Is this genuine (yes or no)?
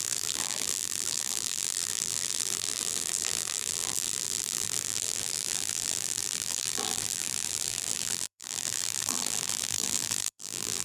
no